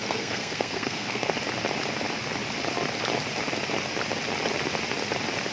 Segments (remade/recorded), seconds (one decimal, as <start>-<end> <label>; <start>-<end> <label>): 0.0-1.3 remade; 1.3-5.5 recorded